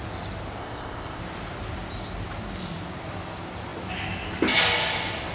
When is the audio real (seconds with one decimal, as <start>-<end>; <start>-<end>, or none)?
0.0-0.6; 1.2-5.3